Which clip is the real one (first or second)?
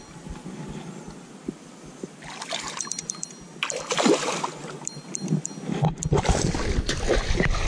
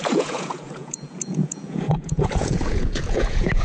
first